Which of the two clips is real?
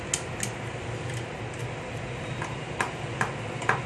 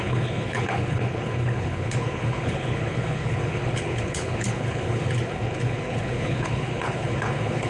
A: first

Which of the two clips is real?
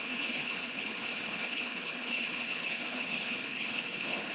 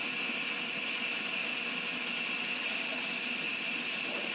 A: second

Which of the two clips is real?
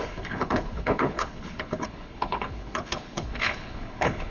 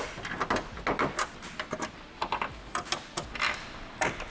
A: second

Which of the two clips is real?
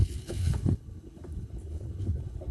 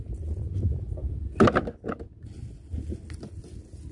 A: second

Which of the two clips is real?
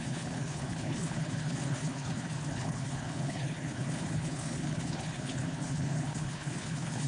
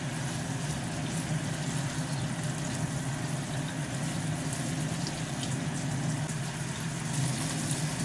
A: second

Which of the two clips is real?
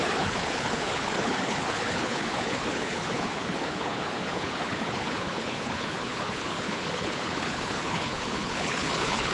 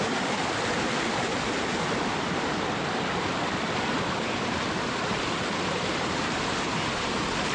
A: second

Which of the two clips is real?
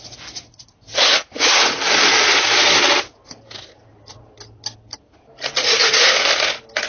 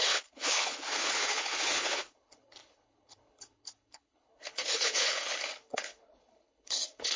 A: first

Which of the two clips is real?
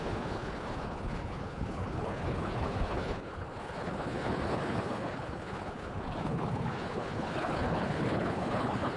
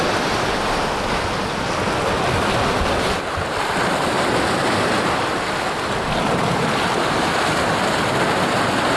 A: second